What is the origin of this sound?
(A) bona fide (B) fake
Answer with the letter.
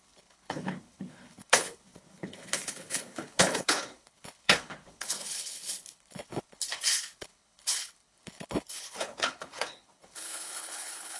B